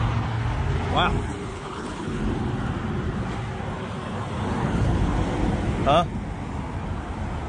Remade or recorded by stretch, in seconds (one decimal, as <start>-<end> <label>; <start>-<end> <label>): 0.0-1.5 recorded; 1.5-2.2 remade; 2.2-4.6 recorded; 4.6-5.1 remade; 5.1-7.5 recorded